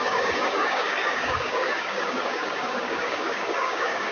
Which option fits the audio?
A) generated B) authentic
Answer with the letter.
A